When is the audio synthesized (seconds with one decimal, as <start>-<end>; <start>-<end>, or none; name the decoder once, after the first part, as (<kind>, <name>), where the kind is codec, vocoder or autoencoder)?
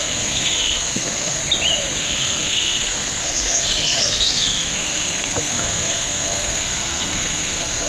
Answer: 0.0-1.4 (codec, SNAC); 2.0-7.9